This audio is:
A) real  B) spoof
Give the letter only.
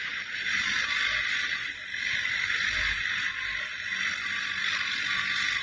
A